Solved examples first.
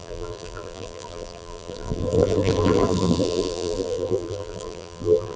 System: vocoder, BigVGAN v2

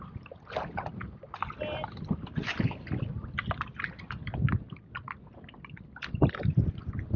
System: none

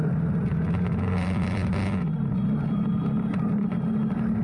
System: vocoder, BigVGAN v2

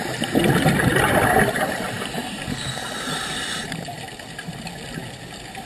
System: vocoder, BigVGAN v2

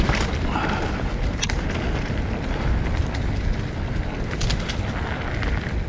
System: none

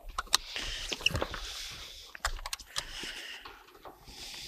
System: none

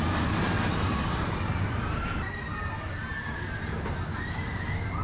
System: none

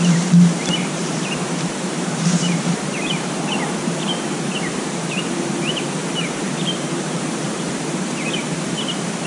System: vocoder, BigVGAN v2